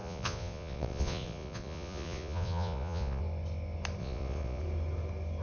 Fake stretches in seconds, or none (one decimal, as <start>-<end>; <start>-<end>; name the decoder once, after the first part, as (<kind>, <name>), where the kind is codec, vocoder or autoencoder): 0.0-3.2 (vocoder, Vocos); 4.0-4.6